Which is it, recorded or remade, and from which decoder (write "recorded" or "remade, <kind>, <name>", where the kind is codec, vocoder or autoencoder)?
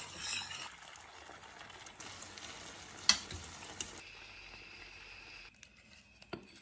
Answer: recorded